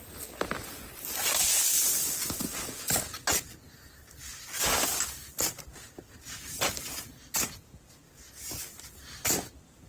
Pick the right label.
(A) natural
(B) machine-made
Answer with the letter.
A